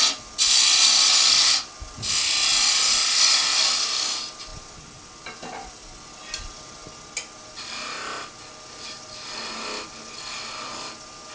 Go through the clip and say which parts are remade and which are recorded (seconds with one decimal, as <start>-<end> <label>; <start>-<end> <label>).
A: 0.0-11.3 recorded